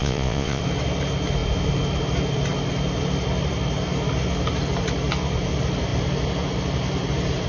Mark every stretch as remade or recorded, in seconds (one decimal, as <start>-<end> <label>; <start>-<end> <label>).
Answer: 0.0-0.6 remade; 0.6-7.5 recorded

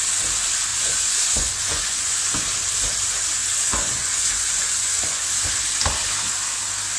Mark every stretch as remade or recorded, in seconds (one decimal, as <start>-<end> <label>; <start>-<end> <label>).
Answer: 0.0-0.7 recorded; 0.7-2.4 remade; 2.4-3.4 recorded; 3.4-5.3 remade; 5.3-7.0 recorded

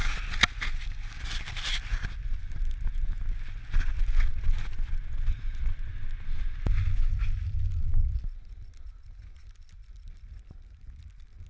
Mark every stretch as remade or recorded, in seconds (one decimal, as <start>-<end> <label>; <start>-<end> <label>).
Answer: 0.0-11.5 recorded